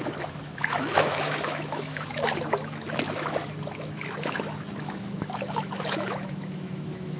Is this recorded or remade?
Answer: remade